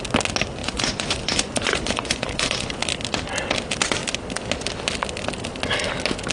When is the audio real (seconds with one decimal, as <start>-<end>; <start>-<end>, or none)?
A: 0.0-0.6; 2.8-6.3